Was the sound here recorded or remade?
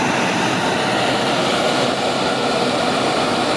remade